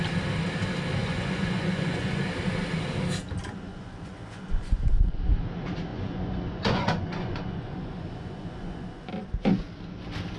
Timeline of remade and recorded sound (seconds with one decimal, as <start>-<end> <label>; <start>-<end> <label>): 0.0-1.0 recorded; 1.0-2.2 remade; 2.2-3.7 recorded; 3.7-5.2 remade; 5.2-5.9 recorded; 5.9-9.1 remade; 9.1-10.4 recorded